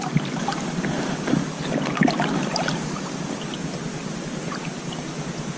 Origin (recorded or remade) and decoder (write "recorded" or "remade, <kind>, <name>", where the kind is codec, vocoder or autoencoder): recorded